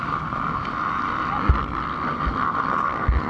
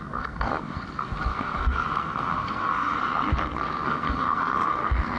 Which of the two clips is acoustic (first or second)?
first